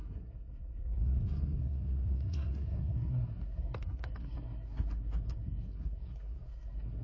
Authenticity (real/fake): fake